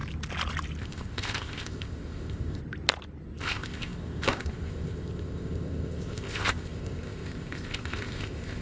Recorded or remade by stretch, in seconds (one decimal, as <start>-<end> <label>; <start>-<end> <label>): 0.0-0.8 recorded; 0.8-2.6 remade; 2.6-3.4 recorded; 3.4-8.6 remade